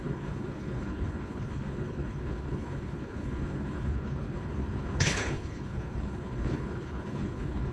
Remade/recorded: remade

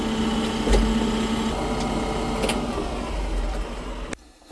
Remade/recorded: recorded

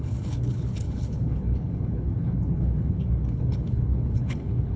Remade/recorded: remade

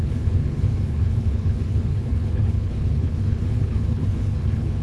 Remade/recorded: remade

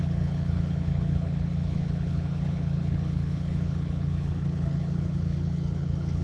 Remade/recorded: remade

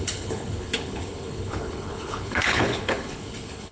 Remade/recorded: remade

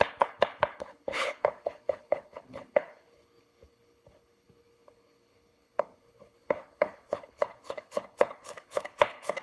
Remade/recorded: remade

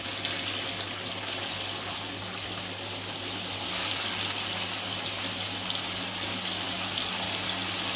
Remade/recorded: recorded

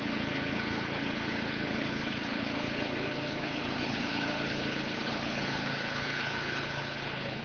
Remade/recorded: remade